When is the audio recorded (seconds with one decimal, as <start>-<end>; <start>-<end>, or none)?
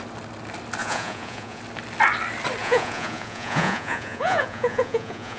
0.0-0.8; 1.6-2.6